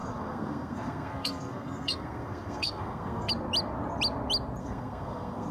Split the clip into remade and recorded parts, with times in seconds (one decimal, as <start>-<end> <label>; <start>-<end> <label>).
0.0-3.3 remade; 3.3-4.6 recorded; 4.6-5.5 remade